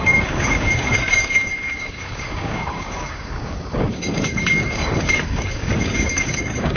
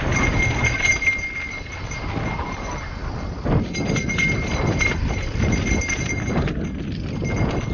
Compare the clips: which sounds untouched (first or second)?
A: second